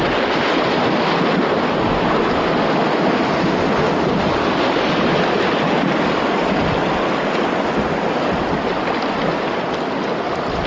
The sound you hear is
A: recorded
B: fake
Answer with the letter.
A